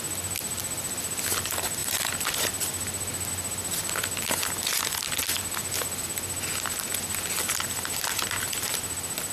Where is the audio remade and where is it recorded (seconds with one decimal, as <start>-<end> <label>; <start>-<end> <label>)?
0.0-9.3 recorded